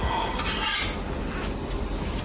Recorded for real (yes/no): yes